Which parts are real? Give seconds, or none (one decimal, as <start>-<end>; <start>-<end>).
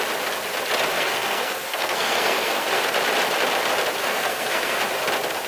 0.0-0.9; 2.9-4.0; 4.8-5.5